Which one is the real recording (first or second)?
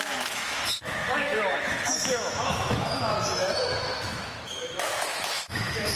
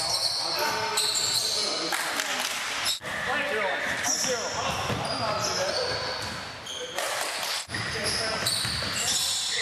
second